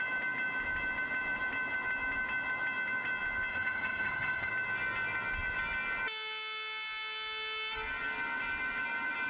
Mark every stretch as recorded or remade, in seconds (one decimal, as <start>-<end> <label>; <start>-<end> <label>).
0.0-3.5 recorded; 3.5-4.5 remade; 4.5-9.3 recorded